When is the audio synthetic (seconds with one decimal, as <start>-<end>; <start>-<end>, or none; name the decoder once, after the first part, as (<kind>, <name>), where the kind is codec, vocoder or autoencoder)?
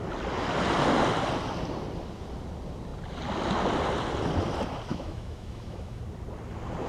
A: 4.9-6.0 (autoencoder, DAC-VAE)